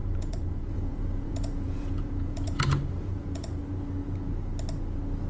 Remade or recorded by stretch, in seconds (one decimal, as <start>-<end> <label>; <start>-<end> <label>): 0.0-3.6 remade; 3.6-5.3 recorded